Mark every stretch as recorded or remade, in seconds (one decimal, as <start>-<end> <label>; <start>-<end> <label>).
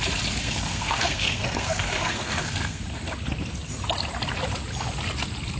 0.0-0.4 recorded; 0.4-2.8 remade; 2.8-5.6 recorded